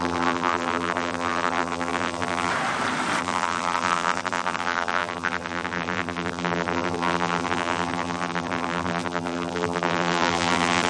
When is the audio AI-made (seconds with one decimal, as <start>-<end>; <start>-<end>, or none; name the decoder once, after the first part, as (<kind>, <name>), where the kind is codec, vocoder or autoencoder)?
0.0-2.5 (vocoder, BigVGAN v2); 3.2-10.9